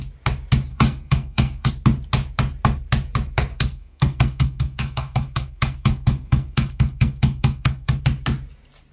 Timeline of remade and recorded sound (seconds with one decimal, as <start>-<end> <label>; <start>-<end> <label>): 0.0-0.7 recorded; 0.7-1.7 remade; 1.7-3.5 recorded; 3.5-8.0 remade; 8.0-8.9 recorded